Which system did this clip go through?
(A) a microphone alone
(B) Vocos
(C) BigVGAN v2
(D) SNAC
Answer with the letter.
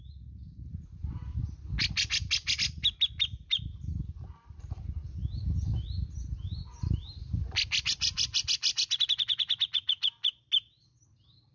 A